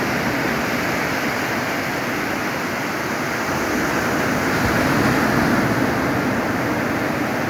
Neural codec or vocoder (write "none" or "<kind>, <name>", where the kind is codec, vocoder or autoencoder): none